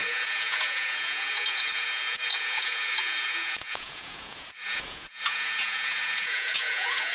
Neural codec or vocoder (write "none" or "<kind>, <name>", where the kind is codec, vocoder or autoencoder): vocoder, Vocos